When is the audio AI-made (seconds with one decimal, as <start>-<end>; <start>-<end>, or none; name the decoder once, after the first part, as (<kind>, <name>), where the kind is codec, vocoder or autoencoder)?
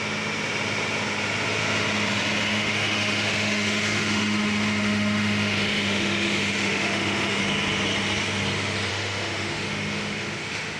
2.5-7.4 (autoencoder, DAC-VAE); 8.9-10.8